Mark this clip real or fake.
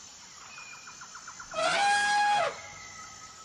real